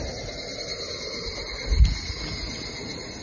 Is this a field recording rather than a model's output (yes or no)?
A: yes